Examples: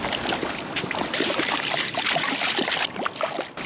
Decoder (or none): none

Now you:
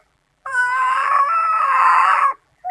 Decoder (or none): vocoder, BigVGAN v2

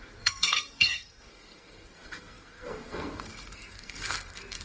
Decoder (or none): codec, SNAC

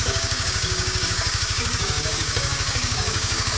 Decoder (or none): codec, DAC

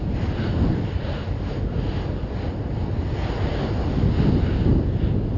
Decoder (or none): none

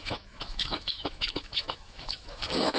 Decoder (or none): autoencoder, DAC-VAE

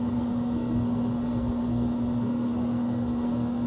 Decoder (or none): codec, SNAC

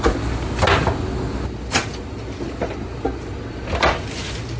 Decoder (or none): none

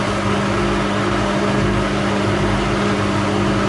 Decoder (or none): none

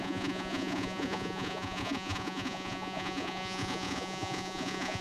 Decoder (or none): vocoder, Vocos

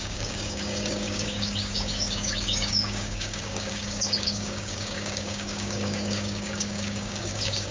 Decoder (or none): codec, DAC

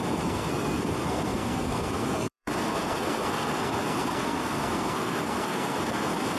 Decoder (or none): codec, SNAC